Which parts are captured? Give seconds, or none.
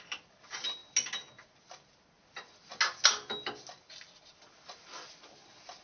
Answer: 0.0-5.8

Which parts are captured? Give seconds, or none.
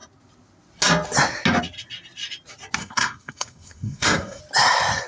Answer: 0.0-2.8; 4.4-5.1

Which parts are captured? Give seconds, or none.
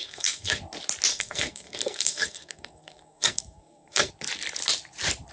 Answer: 0.6-1.1; 4.1-5.3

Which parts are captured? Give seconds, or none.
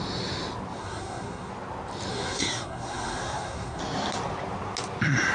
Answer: 0.0-0.8; 1.5-2.1; 3.8-5.3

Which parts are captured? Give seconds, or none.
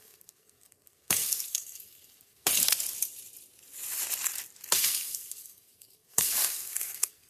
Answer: 2.5-4.7